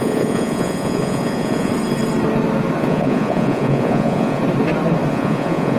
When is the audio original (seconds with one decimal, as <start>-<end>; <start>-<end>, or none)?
1.7-2.8; 4.4-5.1